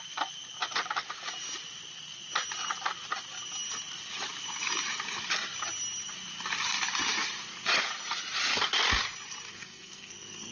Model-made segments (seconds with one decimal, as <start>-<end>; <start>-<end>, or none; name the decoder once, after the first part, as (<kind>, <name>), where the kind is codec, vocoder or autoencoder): 9.5-10.5 (codec, SNAC)